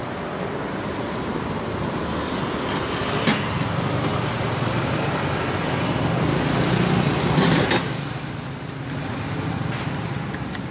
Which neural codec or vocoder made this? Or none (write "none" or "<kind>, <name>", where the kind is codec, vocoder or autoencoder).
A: none